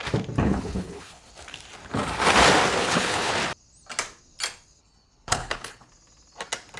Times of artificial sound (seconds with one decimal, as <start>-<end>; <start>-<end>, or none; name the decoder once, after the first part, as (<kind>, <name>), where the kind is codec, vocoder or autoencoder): 0.4-1.3 (codec, HILCodec); 2.8-3.3; 4.8-5.9